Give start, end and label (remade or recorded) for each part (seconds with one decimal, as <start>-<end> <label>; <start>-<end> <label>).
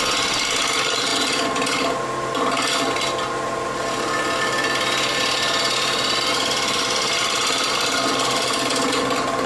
0.0-9.5 recorded